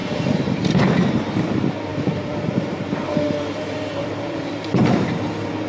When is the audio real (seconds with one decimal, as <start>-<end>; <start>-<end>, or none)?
1.3-1.9; 5.3-5.7